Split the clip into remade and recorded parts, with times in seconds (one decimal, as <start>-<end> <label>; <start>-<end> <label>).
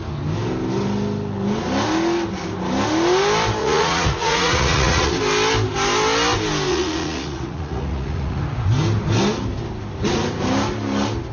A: 0.0-3.6 recorded; 3.6-5.1 remade; 5.1-6.7 recorded; 6.7-8.4 remade; 8.4-11.3 recorded